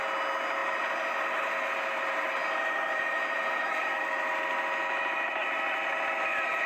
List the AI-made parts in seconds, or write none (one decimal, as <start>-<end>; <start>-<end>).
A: none